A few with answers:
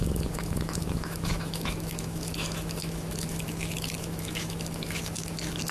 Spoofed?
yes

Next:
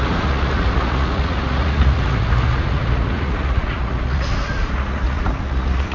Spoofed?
yes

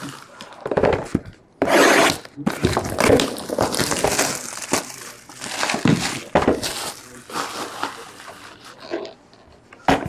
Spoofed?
no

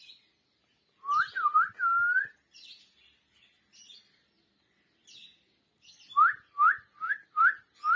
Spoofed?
no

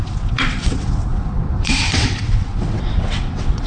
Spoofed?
yes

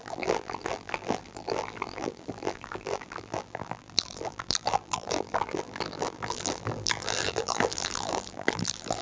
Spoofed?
yes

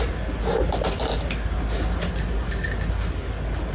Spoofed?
no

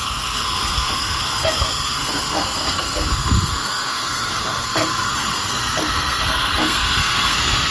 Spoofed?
yes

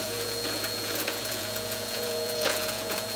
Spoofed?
yes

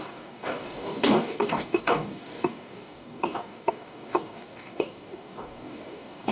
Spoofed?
yes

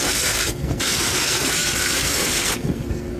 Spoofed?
yes